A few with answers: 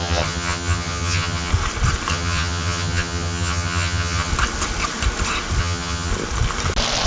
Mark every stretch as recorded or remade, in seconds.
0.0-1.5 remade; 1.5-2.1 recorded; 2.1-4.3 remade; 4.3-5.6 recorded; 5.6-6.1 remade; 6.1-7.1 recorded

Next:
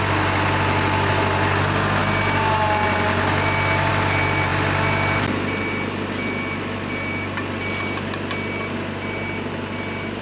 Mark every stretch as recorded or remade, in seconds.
0.0-10.2 recorded

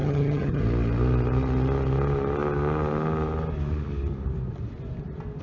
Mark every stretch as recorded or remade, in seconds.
0.0-0.6 remade; 0.6-5.4 recorded